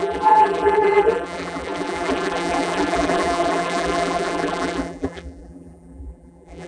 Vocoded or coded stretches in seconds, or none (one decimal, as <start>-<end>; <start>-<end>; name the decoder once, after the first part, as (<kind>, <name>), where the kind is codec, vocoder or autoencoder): 0.0-6.7 (vocoder, BigVGAN v2)